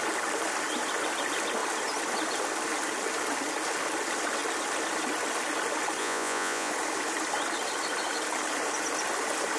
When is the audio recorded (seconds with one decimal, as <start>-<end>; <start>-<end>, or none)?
0.0-6.0; 6.7-9.6

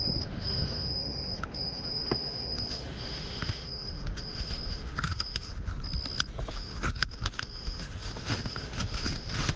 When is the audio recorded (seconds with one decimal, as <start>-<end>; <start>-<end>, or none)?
5.7-6.5

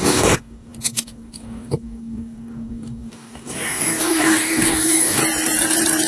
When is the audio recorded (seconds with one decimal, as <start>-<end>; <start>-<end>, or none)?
5.2-6.1

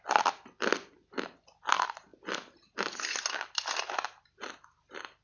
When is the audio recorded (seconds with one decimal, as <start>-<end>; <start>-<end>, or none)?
0.0-5.2

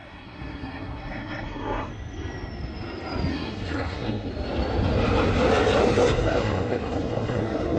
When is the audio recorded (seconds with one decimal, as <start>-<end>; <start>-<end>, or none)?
1.9-3.3; 4.3-5.8